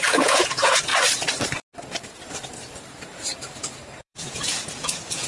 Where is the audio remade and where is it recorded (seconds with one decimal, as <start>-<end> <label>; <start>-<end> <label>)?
0.0-0.9 remade; 0.9-4.0 recorded; 4.0-5.3 remade